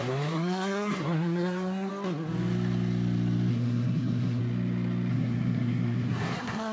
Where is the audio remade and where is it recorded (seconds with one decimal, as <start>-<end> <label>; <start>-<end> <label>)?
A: 0.0-1.9 remade; 1.9-3.5 recorded; 3.5-4.4 remade; 4.4-5.1 recorded; 5.1-6.7 remade